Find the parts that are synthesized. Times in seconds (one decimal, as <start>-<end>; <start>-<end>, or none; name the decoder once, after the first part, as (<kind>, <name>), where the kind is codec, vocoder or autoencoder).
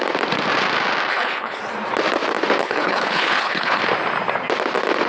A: 1.1-1.6 (codec, HILCodec); 2.6-3.8